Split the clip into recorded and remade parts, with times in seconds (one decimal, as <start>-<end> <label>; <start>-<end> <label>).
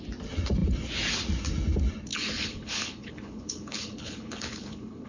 0.0-2.1 recorded; 2.1-5.1 remade